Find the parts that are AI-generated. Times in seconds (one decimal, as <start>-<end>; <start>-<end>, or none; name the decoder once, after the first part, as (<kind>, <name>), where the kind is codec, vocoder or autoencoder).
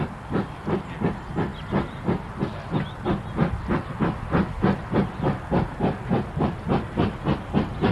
none